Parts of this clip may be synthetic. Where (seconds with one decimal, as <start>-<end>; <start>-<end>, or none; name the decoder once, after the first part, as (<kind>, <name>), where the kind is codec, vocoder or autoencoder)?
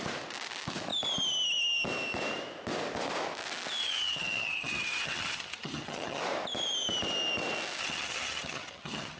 3.8-6.2 (vocoder, HiFi-GAN); 7.8-9.2